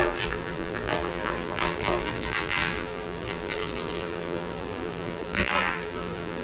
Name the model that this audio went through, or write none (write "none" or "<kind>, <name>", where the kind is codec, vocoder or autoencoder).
vocoder, BigVGAN v2